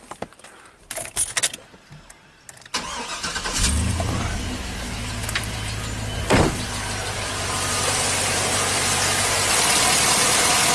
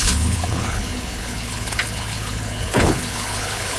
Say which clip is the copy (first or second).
second